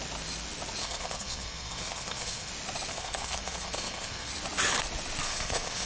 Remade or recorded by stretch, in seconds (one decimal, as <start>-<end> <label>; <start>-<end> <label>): 0.0-0.8 recorded; 0.8-2.5 remade; 2.5-2.9 recorded; 2.9-4.3 remade; 4.3-5.2 recorded; 5.2-5.9 remade